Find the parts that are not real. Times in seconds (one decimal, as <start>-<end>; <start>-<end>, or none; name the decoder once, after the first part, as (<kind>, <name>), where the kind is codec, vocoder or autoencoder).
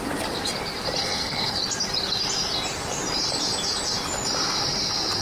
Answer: 1.0-1.6 (codec, SNAC)